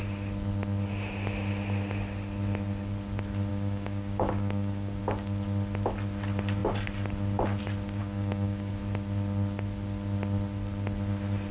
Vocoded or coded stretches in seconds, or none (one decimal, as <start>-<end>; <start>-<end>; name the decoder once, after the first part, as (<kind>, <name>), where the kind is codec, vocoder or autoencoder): 3.5-5.0 (codec, DAC); 8.0-8.7